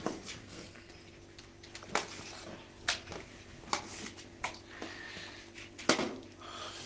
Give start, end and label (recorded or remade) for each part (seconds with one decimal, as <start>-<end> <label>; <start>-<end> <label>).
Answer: 0.0-0.4 recorded; 0.4-0.9 remade; 0.9-6.9 recorded